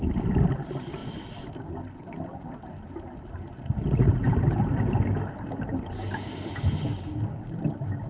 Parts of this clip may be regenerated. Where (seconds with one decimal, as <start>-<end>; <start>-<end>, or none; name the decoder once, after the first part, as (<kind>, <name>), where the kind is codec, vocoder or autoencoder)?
6.9-7.5 (codec, DAC)